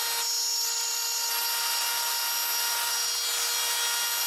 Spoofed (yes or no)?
no